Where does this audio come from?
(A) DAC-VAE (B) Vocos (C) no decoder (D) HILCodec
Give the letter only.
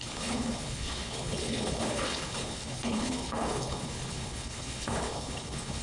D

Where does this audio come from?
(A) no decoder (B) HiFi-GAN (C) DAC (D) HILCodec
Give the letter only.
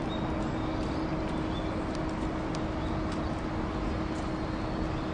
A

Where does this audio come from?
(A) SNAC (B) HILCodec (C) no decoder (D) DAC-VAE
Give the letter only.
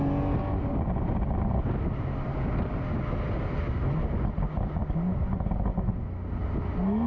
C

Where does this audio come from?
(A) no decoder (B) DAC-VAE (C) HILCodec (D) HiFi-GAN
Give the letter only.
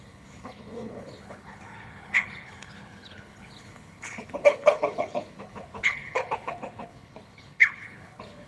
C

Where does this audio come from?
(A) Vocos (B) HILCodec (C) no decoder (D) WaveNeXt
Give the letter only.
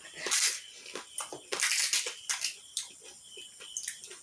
C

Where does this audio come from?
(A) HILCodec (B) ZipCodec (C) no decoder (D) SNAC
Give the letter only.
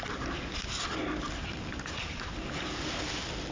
C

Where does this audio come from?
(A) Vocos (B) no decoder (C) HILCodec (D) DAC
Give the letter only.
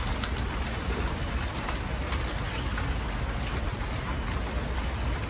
B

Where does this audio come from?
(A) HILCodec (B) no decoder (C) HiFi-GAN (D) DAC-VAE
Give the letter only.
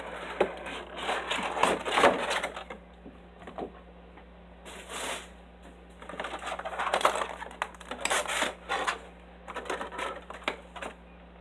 B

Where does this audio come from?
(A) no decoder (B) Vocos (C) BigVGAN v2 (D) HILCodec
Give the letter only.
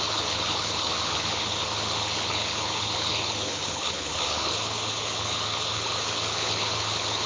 D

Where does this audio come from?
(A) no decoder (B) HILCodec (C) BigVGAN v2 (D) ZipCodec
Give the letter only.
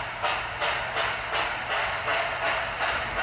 A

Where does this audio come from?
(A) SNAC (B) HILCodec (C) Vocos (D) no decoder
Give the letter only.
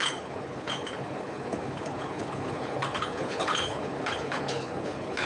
B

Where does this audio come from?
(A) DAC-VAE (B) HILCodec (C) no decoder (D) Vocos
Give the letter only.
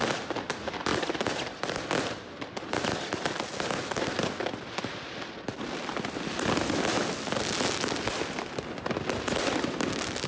C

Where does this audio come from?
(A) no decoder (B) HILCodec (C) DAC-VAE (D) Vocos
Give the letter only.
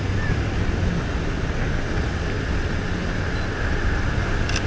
A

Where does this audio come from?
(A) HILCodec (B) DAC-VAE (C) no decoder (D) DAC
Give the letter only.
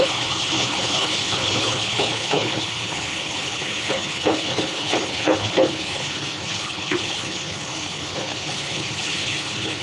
A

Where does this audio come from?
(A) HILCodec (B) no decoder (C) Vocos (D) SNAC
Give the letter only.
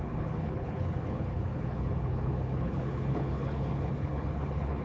A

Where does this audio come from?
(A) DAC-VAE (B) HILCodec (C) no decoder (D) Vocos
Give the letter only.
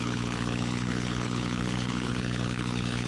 B